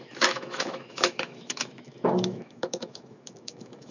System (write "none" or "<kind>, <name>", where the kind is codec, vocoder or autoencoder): autoencoder, DAC-VAE